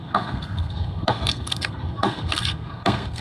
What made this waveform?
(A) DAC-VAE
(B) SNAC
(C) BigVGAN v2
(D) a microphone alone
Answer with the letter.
B